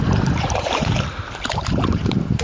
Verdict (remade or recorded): remade